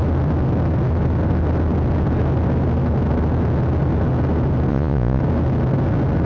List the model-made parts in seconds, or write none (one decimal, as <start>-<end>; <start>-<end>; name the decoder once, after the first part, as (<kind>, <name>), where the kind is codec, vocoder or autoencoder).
4.7-5.2 (vocoder, Vocos)